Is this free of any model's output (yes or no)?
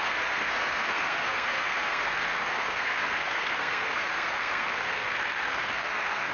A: no